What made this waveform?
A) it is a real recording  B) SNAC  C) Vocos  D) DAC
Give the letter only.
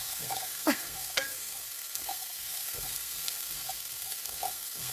B